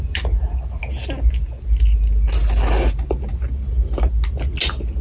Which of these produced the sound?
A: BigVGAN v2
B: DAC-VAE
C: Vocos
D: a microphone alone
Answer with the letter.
D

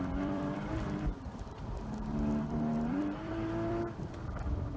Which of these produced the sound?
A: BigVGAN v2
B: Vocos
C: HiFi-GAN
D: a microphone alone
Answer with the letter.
A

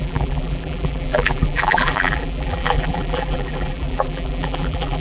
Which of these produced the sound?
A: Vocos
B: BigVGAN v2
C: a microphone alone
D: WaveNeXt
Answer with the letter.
B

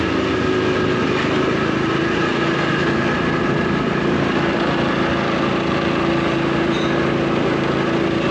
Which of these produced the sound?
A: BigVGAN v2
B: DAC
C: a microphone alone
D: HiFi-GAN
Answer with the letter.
C